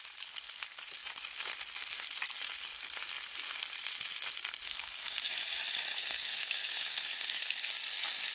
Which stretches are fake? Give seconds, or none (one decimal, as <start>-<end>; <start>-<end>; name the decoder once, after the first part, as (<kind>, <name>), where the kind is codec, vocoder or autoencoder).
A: 4.7-5.3 (codec, SNAC); 6.0-7.7